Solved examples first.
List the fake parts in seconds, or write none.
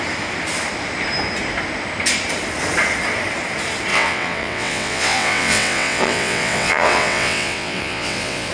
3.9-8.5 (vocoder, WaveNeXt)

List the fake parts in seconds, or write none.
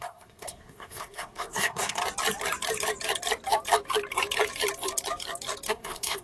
0.0-2.0 (codec, SNAC); 5.7-6.2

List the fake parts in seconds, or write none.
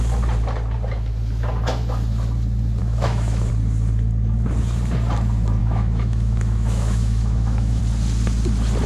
2.8-3.5 (autoencoder, DAC-VAE); 5.6-7.8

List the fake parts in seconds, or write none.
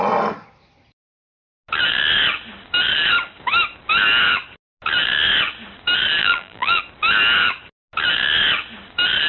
6.2-6.8 (vocoder, BigVGAN v2)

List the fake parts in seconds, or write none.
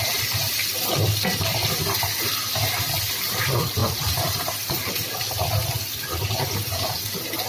3.8-5.9 (vocoder, BigVGAN v2)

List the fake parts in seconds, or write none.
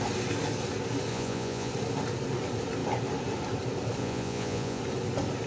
1.1-1.7 (vocoder, Vocos); 4.0-4.8